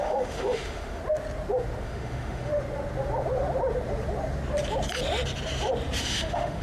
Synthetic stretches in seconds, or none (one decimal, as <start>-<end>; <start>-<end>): 0.0-1.0; 1.8-2.5; 6.0-6.6